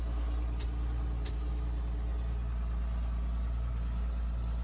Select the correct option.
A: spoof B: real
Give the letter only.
B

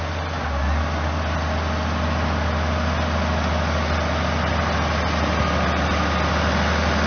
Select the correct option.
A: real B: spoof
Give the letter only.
A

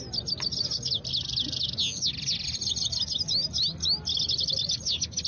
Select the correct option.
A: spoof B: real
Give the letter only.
B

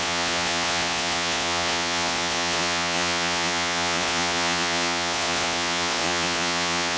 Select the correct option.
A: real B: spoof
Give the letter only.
B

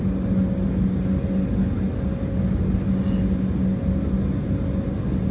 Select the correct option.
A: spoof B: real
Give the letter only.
B